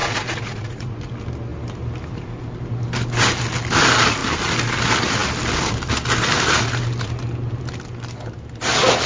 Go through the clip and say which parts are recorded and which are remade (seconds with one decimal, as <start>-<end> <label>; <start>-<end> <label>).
0.0-1.0 remade; 1.0-9.1 recorded